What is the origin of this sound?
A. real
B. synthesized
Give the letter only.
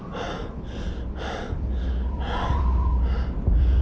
A